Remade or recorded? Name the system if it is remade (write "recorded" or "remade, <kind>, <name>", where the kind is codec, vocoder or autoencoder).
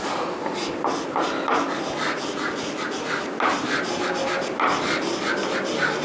recorded